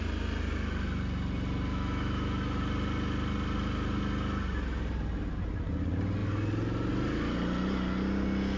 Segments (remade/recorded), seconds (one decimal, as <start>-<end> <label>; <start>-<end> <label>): 0.0-1.7 recorded; 1.7-2.6 remade; 2.6-8.6 recorded